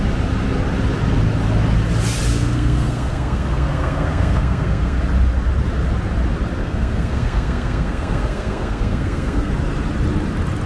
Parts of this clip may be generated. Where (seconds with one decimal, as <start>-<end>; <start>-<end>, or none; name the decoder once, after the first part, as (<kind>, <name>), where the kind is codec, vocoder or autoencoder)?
2.3-5.0 (codec, SNAC); 6.6-9.5